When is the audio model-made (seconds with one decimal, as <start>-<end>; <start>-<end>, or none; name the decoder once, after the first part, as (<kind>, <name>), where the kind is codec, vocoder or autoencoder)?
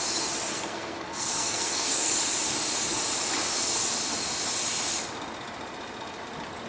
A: 0.5-2.1 (codec, SNAC)